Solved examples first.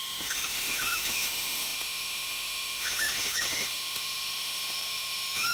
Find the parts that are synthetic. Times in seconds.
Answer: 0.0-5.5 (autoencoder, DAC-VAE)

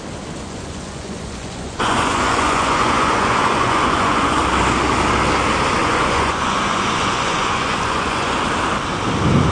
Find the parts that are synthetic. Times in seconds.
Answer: 0.4-4.4 (vocoder, Vocos); 5.8-8.4